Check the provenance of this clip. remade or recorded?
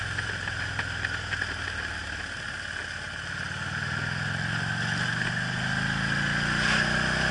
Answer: recorded